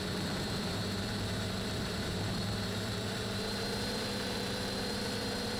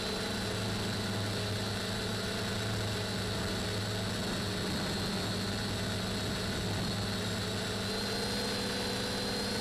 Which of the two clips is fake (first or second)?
first